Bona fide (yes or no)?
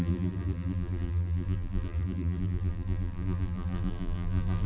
no